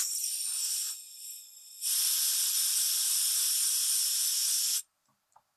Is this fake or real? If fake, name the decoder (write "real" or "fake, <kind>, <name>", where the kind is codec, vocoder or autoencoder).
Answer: real